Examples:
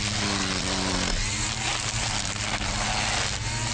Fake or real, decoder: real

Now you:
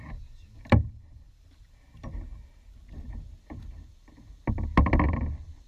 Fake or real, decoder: real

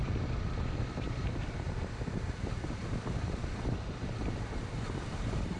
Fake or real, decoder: fake, vocoder, BigVGAN v2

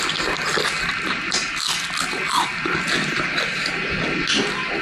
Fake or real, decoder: real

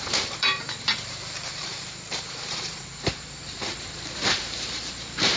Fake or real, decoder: fake, vocoder, BigVGAN v2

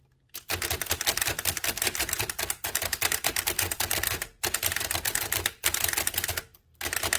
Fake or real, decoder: real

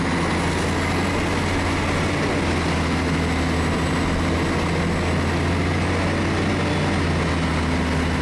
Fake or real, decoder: real